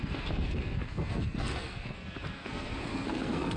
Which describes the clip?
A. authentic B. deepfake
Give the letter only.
B